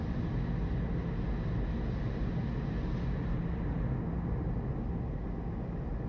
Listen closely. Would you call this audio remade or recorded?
recorded